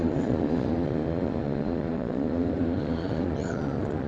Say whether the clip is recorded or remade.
remade